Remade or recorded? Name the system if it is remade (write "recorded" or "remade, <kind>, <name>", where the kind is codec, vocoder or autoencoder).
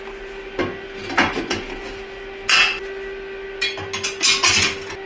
recorded